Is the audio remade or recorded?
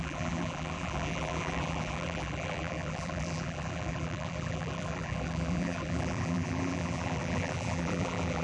remade